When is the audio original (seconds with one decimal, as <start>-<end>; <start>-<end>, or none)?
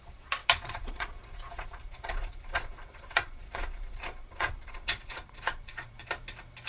6.0-6.7